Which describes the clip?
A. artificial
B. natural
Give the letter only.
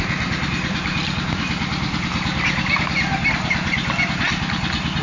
B